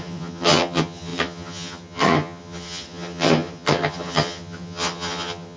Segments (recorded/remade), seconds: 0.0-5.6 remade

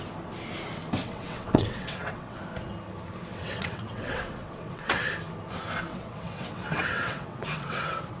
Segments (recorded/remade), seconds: 0.0-1.0 recorded; 1.0-2.4 remade; 2.4-3.3 recorded; 3.3-5.1 remade; 5.1-5.9 recorded; 5.9-8.2 remade

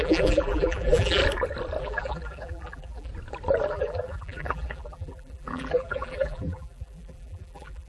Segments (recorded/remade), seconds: 0.0-1.2 remade; 1.2-1.8 recorded; 1.8-3.1 remade; 3.1-3.7 recorded; 3.7-7.9 remade